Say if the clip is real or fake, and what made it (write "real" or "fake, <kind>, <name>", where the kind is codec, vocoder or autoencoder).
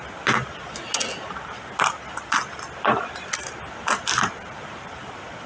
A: real